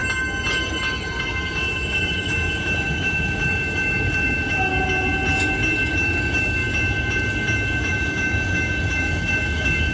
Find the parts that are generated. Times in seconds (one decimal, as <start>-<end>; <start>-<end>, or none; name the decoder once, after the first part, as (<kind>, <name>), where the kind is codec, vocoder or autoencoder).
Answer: 1.2-4.7 (autoencoder, DAC-VAE); 5.9-6.6; 7.9-9.9